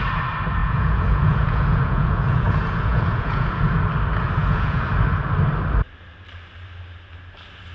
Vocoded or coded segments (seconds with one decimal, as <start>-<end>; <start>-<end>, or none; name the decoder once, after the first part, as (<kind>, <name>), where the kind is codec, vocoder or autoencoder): 0.6-3.6 (vocoder, Vocos); 4.4-4.9